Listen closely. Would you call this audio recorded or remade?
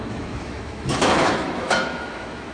remade